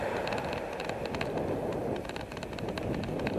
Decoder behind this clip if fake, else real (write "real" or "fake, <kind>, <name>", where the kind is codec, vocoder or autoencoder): real